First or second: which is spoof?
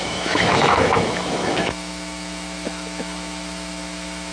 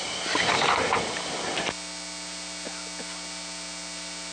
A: first